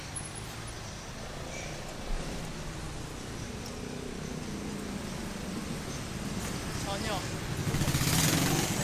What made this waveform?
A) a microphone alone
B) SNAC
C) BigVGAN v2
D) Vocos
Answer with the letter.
A